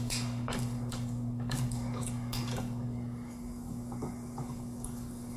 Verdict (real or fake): fake